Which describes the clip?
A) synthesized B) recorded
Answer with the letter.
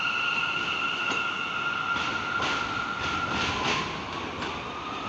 B